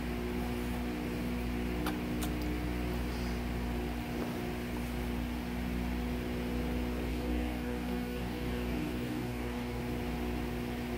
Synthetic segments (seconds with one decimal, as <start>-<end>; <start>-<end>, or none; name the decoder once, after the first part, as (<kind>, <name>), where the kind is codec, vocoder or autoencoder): 7.1-9.8 (codec, DAC)